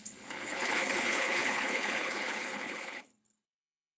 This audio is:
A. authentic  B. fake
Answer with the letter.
B